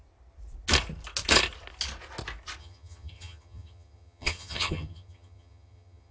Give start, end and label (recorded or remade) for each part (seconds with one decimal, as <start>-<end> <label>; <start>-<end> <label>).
0.0-2.6 recorded; 2.6-6.1 remade